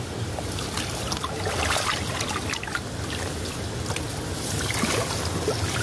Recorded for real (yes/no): yes